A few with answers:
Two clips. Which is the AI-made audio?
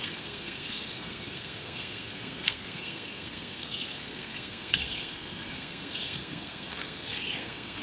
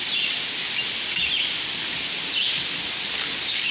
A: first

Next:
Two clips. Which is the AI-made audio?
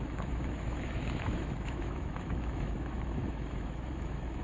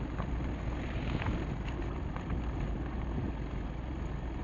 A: first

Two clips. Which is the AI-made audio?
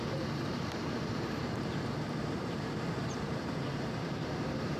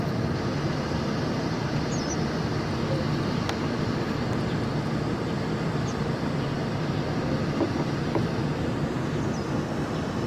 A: first